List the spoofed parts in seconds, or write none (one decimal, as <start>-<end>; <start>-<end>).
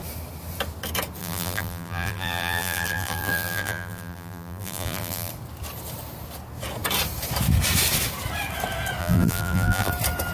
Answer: 1.2-5.3; 9.0-9.9